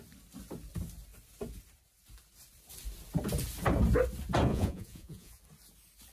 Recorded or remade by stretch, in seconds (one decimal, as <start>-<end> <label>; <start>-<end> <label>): 0.0-4.5 recorded; 4.5-5.4 remade; 5.4-6.1 recorded